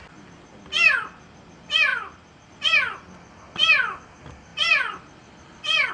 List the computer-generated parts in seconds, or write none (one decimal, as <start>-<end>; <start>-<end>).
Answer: 1.9-2.5; 4.5-5.9